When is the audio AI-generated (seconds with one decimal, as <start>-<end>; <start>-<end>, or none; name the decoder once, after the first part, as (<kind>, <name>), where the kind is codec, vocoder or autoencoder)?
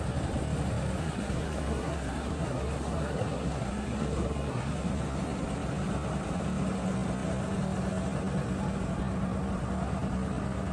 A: 1.0-4.9 (codec, SNAC)